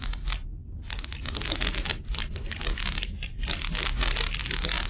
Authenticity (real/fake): real